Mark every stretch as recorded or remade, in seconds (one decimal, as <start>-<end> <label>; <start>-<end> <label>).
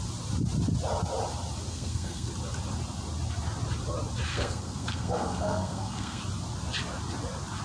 0.0-1.7 recorded; 1.7-2.3 remade; 2.3-4.3 recorded; 4.3-6.2 remade; 6.2-7.6 recorded